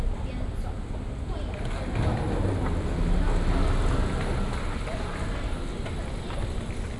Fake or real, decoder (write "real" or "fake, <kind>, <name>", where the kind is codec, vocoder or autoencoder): real